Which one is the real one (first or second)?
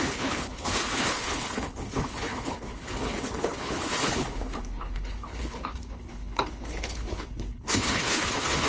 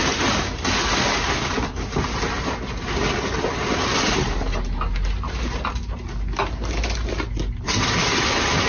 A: second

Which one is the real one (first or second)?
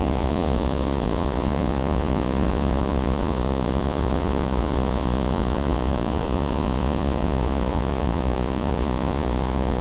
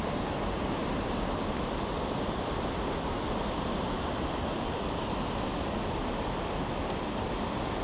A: second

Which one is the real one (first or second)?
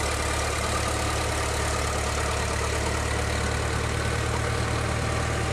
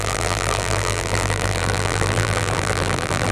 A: first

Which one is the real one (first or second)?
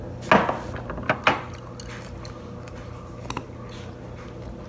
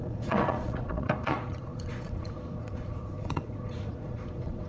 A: first